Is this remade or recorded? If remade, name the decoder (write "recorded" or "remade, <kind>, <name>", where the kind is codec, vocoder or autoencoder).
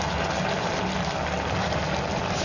recorded